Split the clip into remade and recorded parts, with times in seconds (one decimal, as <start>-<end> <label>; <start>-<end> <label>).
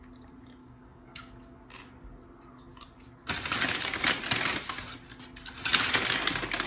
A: 0.0-0.6 recorded; 0.6-1.6 remade; 1.6-6.7 recorded